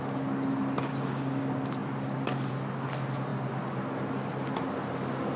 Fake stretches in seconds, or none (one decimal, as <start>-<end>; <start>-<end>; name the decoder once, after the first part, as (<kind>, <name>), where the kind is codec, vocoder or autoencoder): 0.9-1.4 (codec, DAC)